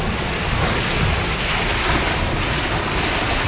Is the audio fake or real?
real